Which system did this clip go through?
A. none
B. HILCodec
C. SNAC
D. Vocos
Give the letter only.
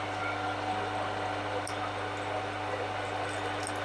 A